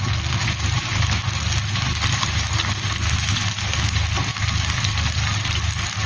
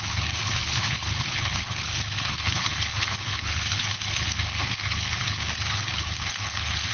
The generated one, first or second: second